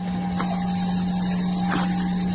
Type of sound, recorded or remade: recorded